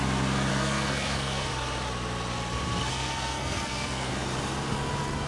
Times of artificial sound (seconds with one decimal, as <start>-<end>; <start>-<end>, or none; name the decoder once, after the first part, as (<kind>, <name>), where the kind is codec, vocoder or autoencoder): 0.5-1.5 (codec, SNAC); 2.9-4.1